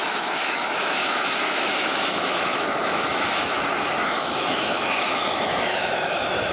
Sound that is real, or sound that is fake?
fake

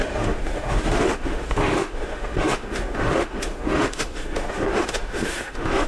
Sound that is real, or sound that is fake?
fake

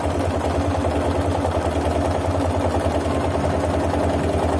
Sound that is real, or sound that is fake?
real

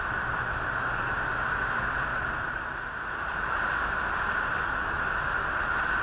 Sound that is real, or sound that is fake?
real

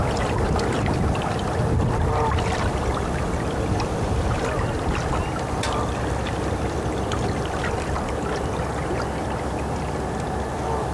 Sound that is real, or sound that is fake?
real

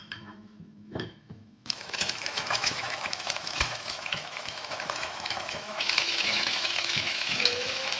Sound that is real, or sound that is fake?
fake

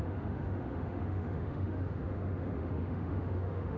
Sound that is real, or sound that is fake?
fake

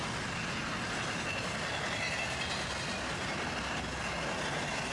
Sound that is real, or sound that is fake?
real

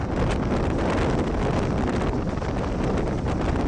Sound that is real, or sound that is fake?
real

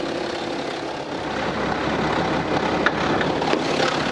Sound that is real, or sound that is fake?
real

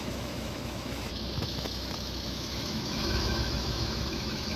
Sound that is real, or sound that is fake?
fake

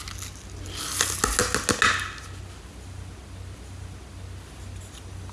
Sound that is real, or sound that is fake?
real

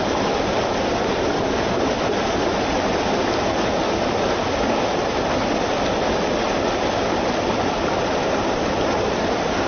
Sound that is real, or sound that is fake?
real